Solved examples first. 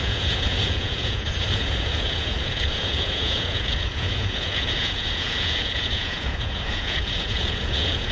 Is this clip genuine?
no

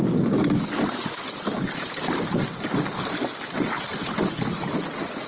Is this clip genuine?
yes